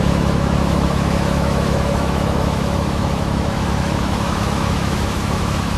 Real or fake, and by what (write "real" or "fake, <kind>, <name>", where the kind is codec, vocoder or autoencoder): fake, autoencoder, DAC-VAE